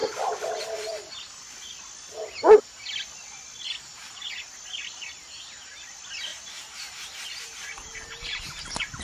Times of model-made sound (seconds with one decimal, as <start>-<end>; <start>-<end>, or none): 0.0-0.6; 6.3-8.5